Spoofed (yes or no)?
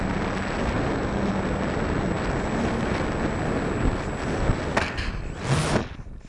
no